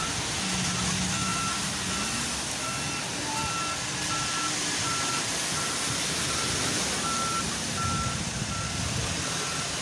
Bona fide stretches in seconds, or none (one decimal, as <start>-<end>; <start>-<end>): 0.0-9.8